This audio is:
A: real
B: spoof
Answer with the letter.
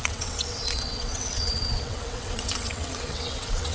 B